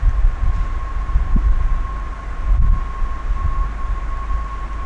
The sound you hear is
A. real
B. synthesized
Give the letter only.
A